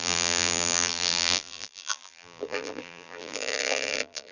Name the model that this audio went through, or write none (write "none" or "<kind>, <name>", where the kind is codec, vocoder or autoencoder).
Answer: vocoder, BigVGAN v2